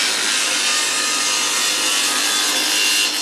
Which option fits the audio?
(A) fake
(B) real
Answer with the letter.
B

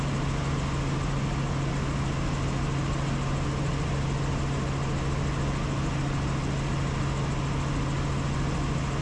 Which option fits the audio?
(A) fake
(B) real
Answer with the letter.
B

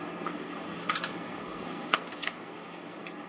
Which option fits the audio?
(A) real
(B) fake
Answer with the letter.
B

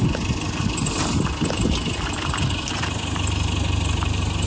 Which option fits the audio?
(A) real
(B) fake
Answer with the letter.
A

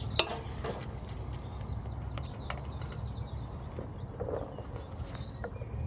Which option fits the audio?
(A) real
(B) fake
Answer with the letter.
A